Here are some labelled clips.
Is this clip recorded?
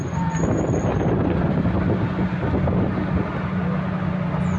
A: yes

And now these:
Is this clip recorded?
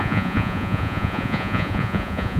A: no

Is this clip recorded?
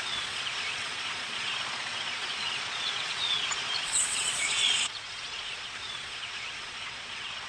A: no